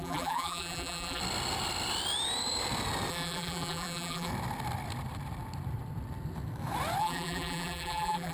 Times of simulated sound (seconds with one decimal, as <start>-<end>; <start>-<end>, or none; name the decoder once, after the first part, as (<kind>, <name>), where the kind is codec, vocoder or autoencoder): 0.0-1.2 (vocoder, BigVGAN v2); 3.1-4.3; 7.0-8.3